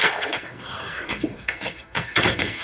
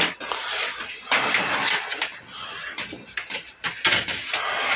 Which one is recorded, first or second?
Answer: second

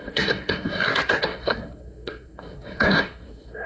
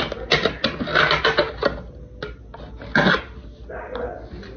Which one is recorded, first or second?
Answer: second